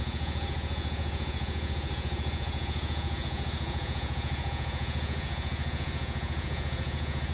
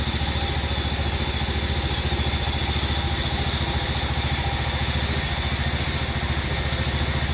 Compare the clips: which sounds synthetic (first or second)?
first